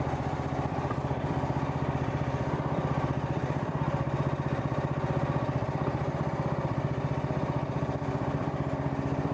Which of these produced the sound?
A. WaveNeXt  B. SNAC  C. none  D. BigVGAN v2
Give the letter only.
D